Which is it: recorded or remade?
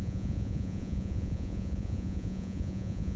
remade